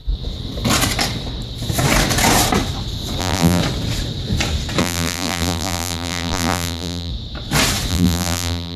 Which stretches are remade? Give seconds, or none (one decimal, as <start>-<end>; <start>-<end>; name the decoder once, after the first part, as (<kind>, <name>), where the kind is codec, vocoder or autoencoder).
3.2-3.6 (vocoder, BigVGAN v2); 4.8-7.1; 7.9-8.8